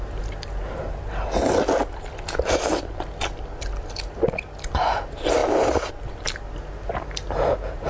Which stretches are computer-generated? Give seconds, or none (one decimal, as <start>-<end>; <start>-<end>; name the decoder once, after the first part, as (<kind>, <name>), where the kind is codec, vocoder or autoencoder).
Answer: none